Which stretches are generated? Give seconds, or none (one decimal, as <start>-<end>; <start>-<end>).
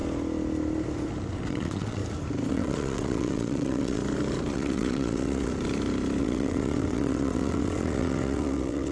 1.5-2.0; 2.5-4.0; 4.5-5.5; 6.2-8.9